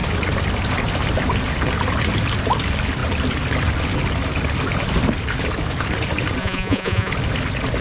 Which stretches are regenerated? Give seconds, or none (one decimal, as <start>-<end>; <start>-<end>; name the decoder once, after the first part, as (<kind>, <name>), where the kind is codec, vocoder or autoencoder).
6.4-7.1 (vocoder, Vocos)